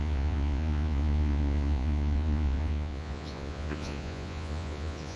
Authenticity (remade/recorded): remade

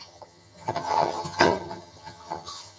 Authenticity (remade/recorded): remade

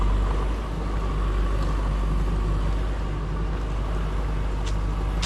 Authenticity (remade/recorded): recorded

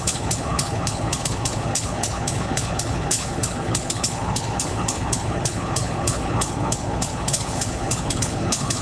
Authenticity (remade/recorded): remade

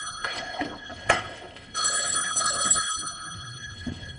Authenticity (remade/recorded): remade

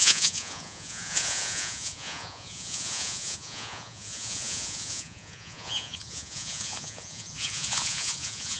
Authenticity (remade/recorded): remade